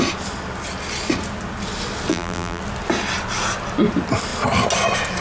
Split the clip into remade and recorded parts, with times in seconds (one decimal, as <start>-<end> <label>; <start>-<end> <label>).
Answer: 0.0-2.1 recorded; 2.1-2.6 remade; 2.6-5.2 recorded